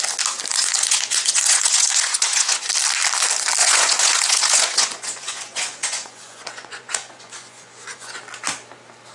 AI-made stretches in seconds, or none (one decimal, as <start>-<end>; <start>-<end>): 0.5-2.7; 3.6-8.2